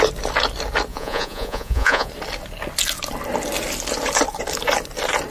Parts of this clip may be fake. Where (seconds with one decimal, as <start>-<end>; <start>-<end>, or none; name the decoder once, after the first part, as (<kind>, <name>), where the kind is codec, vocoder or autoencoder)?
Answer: 0.9-2.1 (vocoder, Vocos)